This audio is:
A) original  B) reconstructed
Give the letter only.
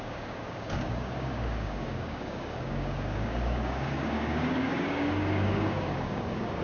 B